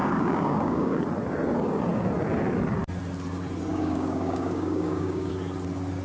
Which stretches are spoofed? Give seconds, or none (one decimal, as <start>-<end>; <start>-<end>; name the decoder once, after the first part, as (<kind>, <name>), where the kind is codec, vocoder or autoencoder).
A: 0.0-1.0 (codec, DAC); 3.7-5.3